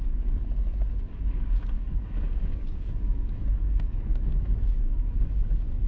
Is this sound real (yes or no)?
no